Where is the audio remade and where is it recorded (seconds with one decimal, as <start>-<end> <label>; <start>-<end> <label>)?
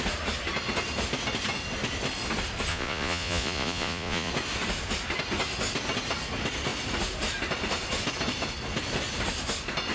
0.0-2.7 recorded; 2.7-4.3 remade; 4.3-9.9 recorded